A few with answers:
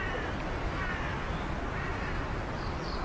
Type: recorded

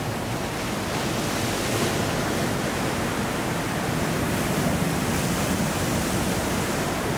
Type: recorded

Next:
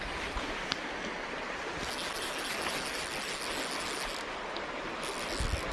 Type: recorded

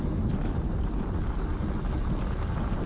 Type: recorded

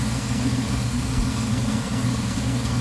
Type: remade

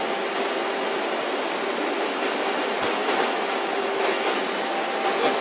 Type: recorded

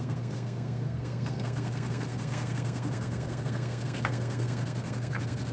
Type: remade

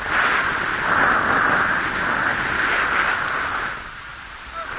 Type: recorded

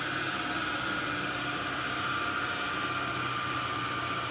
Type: recorded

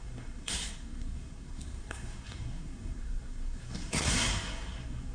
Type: remade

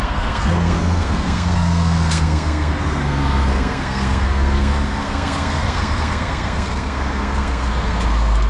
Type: remade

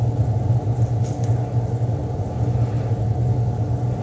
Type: recorded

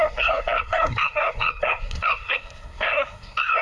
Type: remade